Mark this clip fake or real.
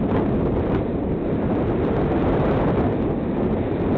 fake